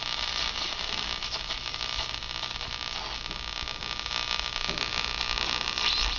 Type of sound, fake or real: real